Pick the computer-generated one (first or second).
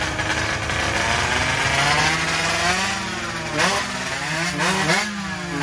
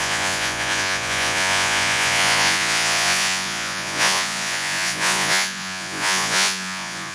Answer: second